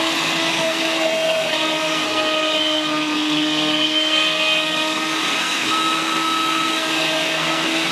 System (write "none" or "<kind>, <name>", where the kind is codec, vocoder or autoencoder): codec, SNAC